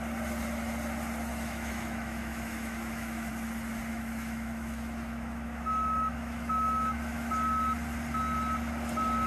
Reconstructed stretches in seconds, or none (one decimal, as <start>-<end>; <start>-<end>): 1.3-3.3; 3.9-7.3